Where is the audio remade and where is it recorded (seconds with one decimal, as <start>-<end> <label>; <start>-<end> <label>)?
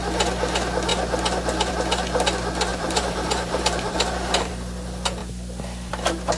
0.0-2.7 recorded; 2.7-4.5 remade; 4.5-6.4 recorded